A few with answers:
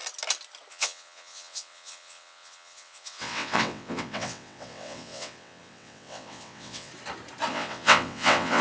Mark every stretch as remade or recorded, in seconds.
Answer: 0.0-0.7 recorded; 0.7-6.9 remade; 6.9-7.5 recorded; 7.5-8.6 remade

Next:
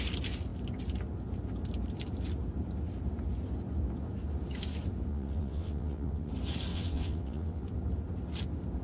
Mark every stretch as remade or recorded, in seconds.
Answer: 0.0-5.1 recorded; 5.1-6.3 remade; 6.3-6.7 recorded; 6.7-7.6 remade; 7.6-8.8 recorded

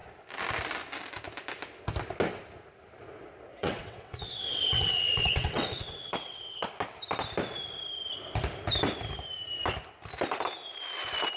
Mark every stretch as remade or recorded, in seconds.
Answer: 0.0-3.5 recorded; 3.5-6.7 remade; 6.7-11.4 recorded

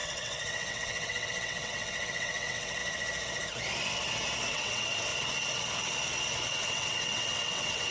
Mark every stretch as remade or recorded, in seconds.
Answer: 0.0-2.8 remade; 2.8-4.5 recorded; 4.5-5.1 remade; 5.1-6.5 recorded; 6.5-7.9 remade

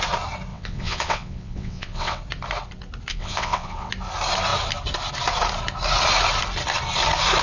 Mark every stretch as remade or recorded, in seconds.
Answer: 0.0-0.5 recorded; 0.5-2.2 remade; 2.2-3.1 recorded; 3.1-3.9 remade; 3.9-7.4 recorded

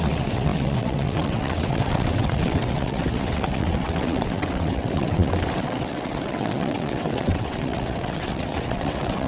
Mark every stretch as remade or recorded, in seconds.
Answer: 0.0-9.3 remade

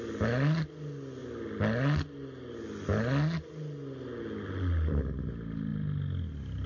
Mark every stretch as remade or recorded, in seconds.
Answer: 0.0-6.7 recorded